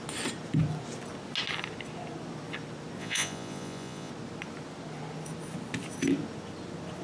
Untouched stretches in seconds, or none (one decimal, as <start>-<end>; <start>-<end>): 0.0-3.0; 4.1-7.0